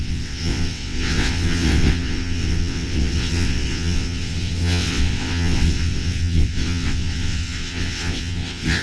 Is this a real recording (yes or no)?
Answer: no